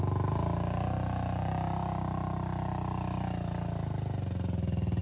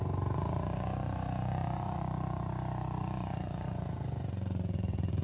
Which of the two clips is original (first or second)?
first